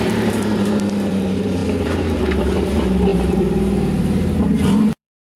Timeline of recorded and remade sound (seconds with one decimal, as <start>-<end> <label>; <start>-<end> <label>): 0.0-5.4 remade